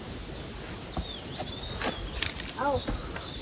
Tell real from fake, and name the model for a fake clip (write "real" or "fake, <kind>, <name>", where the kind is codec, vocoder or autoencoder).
real